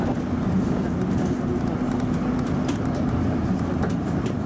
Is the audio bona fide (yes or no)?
yes